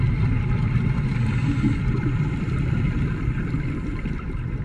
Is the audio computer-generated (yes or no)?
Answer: yes